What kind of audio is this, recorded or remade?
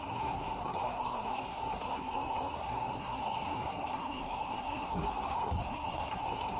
remade